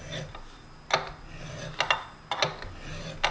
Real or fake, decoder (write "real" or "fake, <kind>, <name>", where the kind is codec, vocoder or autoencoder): real